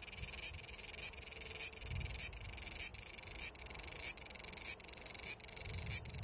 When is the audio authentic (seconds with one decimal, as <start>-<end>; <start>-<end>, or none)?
0.0-6.2